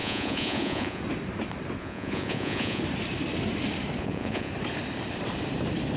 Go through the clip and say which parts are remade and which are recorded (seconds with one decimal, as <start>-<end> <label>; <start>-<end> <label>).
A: 0.0-1.0 remade; 1.0-1.8 recorded; 1.8-2.8 remade; 2.8-4.0 recorded; 4.0-4.5 remade; 4.5-6.0 recorded